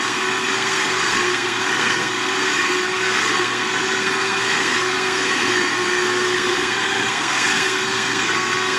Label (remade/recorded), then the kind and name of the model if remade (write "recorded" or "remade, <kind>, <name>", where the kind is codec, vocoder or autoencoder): remade, codec, SNAC